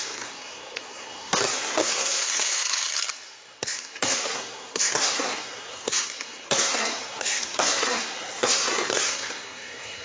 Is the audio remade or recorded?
remade